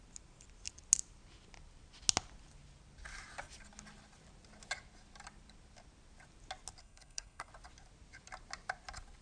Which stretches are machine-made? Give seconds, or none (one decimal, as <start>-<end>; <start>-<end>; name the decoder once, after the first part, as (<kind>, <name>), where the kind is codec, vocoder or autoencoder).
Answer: 6.8-7.5 (codec, SNAC)